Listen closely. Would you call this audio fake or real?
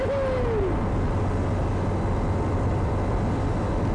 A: real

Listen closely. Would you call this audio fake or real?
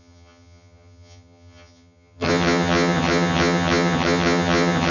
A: fake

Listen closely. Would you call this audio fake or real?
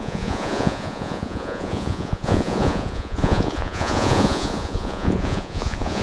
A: fake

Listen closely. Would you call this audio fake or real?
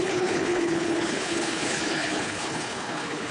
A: fake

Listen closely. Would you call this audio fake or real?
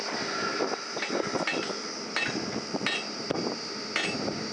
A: real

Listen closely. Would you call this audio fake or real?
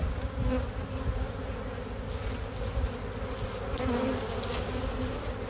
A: real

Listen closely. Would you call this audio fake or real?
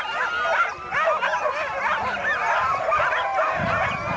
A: real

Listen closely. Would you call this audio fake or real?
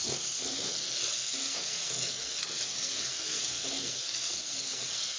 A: fake